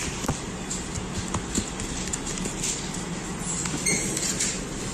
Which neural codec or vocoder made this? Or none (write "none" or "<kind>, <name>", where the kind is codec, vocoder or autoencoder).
none